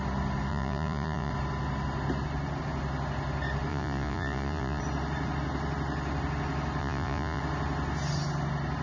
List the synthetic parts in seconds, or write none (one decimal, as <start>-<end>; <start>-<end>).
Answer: 0.5-1.3; 3.7-4.8; 6.8-7.4